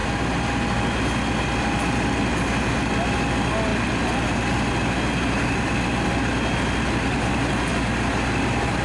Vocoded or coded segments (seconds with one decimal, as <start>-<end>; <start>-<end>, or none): none